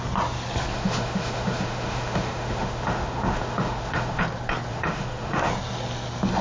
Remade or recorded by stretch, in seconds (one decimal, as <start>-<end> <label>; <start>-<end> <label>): 0.0-0.7 recorded; 0.7-4.2 remade; 4.2-4.7 recorded; 4.7-5.5 remade; 5.5-6.4 recorded